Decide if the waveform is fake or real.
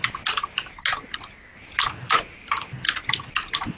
real